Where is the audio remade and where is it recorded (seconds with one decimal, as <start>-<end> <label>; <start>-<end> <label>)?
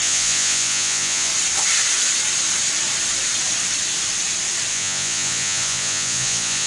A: 0.0-1.3 remade; 1.3-4.7 recorded; 4.7-6.7 remade